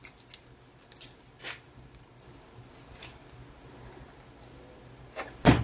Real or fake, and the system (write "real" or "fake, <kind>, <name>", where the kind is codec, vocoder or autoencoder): real